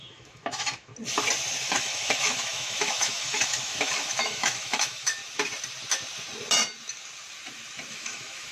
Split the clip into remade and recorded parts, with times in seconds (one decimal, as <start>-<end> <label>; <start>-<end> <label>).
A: 0.0-0.9 remade; 0.9-1.6 recorded; 1.6-5.2 remade; 5.2-7.9 recorded; 7.9-8.5 remade